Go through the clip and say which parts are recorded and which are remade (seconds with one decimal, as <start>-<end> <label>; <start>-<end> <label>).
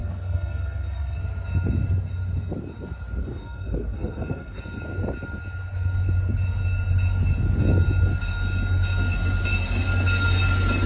0.0-1.2 remade; 1.2-3.2 recorded; 3.2-4.6 remade; 4.6-10.9 recorded